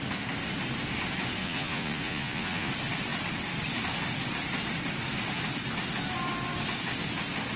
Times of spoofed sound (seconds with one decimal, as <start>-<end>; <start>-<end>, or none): 1.4-2.7